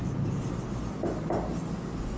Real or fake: real